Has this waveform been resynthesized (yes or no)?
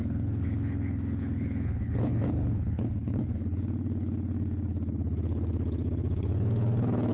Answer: yes